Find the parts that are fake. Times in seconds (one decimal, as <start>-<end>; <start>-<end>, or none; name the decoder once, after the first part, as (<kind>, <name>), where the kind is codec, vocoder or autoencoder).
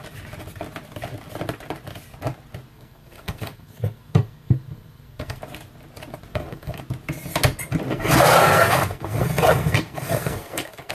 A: 2.7-5.4 (codec, SNAC); 6.3-6.8; 7.9-10.9